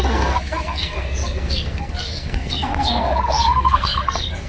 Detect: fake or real fake